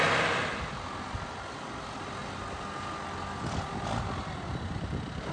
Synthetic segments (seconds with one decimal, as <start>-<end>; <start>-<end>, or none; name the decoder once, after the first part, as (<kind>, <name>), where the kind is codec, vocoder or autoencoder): none